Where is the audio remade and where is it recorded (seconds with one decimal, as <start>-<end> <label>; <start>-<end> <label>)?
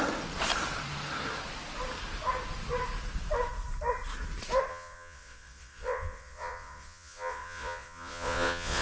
0.0-4.7 recorded; 4.7-8.8 remade